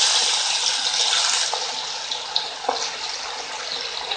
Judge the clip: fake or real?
real